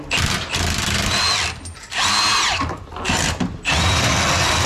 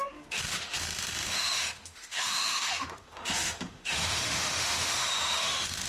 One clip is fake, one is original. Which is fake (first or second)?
second